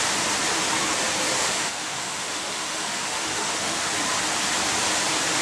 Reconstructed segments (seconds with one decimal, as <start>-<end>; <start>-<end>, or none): 1.4-3.9